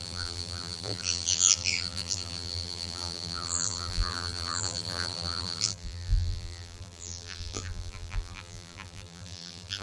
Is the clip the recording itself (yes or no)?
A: no